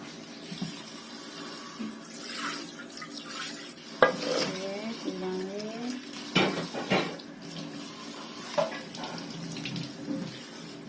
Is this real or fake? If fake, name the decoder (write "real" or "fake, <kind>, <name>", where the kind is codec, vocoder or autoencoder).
real